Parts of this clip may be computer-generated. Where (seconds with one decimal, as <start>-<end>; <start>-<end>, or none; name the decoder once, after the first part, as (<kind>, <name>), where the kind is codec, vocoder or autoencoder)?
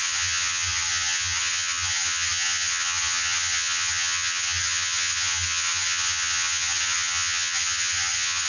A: 0.0-8.5 (vocoder, HiFi-GAN)